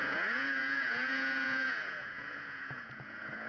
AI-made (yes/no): yes